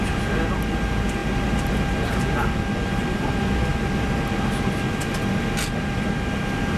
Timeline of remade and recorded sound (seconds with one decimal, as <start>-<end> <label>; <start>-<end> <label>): 0.0-6.8 recorded